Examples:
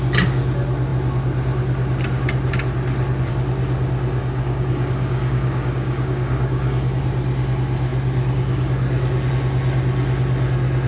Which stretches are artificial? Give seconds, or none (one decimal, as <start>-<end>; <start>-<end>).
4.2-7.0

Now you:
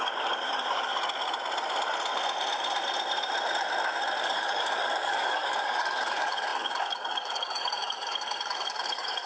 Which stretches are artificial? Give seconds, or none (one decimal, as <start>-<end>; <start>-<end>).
0.0-0.9; 4.2-9.3

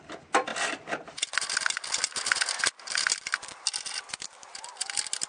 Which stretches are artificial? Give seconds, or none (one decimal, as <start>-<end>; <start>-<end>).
none

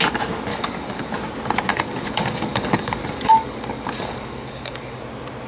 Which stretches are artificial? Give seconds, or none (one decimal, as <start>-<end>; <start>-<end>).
0.5-1.1; 1.7-5.0